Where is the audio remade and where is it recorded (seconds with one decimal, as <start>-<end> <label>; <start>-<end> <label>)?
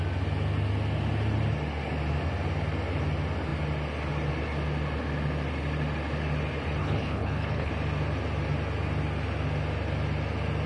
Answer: 0.0-6.8 recorded; 6.8-7.7 remade; 7.7-10.7 recorded